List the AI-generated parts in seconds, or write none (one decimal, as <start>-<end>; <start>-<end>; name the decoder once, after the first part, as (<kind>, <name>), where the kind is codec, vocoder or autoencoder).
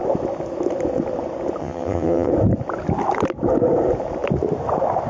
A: 1.6-2.3 (vocoder, HiFi-GAN)